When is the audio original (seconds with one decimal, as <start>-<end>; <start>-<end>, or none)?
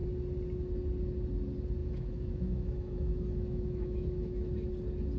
0.0-1.8; 4.7-5.2